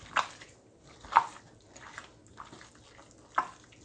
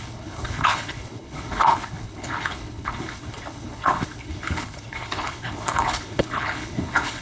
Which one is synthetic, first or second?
second